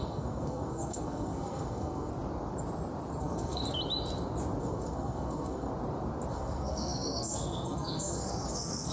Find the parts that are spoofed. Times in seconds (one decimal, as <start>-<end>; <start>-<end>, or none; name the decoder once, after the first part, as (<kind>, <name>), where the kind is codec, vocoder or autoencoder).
0.0-2.1 (codec, SNAC); 3.2-3.6; 4.6-5.7; 6.3-8.9